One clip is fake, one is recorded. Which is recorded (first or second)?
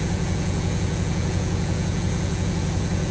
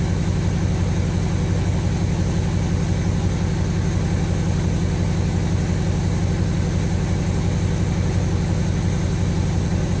second